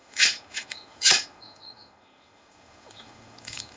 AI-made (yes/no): yes